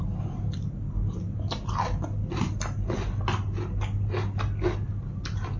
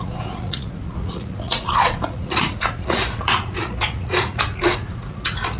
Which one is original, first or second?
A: first